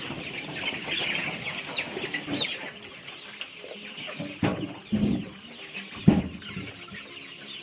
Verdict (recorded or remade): recorded